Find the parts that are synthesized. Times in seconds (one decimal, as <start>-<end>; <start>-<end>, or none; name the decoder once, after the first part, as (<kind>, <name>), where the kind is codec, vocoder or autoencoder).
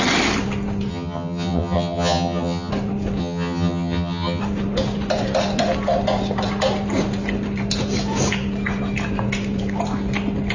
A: 0.9-2.7 (vocoder, HiFi-GAN); 3.2-4.4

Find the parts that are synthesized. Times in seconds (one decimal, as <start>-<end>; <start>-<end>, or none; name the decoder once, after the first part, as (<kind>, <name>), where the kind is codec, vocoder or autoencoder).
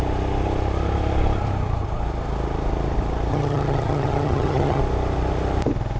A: 3.3-4.8 (vocoder, HiFi-GAN)